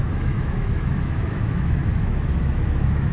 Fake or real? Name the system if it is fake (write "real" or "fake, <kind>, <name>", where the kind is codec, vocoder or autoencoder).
fake, autoencoder, DAC-VAE